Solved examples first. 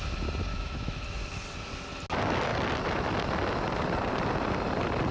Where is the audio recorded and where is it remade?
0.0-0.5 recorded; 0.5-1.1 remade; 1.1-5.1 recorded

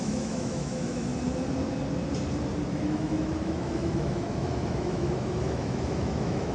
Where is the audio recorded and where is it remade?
0.0-1.1 remade; 1.1-2.7 recorded; 2.7-6.5 remade

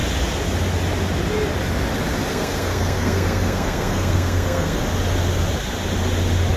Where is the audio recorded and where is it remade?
0.0-2.3 recorded; 2.3-4.8 remade; 4.8-6.6 recorded

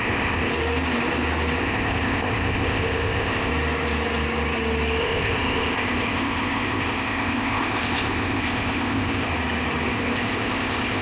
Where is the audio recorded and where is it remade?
0.0-0.5 remade; 0.5-1.6 recorded; 1.6-3.5 remade; 3.5-5.0 recorded; 5.0-9.3 remade; 9.3-9.9 recorded; 9.9-11.0 remade

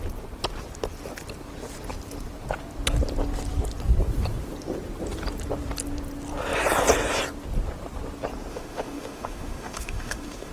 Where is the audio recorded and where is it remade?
0.0-8.5 recorded; 8.5-10.5 remade

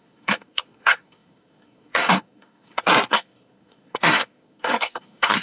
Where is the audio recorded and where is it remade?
0.0-5.4 remade

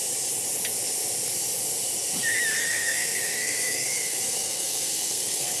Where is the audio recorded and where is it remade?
0.0-2.6 recorded; 2.6-5.6 remade

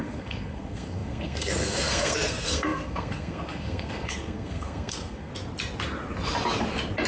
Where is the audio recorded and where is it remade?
0.0-5.3 remade; 5.3-7.1 recorded